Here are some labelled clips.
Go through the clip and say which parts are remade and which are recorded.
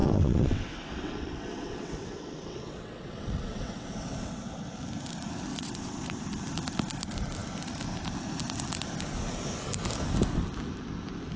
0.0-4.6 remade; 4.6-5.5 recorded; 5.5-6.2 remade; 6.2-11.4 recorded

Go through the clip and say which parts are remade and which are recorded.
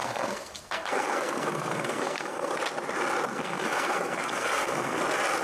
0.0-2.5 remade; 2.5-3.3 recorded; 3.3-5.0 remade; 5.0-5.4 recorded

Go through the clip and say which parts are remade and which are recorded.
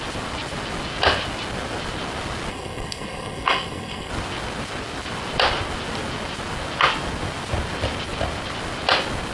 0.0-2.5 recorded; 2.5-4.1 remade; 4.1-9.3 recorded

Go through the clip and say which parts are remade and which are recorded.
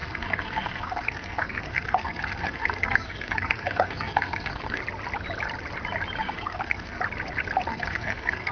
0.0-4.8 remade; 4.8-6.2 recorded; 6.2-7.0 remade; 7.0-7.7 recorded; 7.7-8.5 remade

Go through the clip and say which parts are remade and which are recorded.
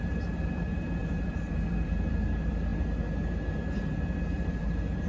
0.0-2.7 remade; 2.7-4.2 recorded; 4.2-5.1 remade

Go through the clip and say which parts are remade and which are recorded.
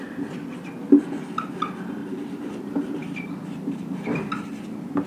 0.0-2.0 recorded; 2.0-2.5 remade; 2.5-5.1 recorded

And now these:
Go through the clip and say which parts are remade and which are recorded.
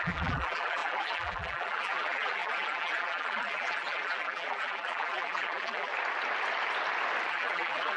0.0-5.9 remade; 5.9-7.3 recorded; 7.3-8.0 remade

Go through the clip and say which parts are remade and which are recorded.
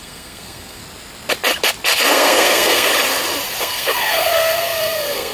0.0-0.8 remade; 0.8-2.1 recorded; 2.1-2.9 remade; 2.9-3.6 recorded; 3.6-5.3 remade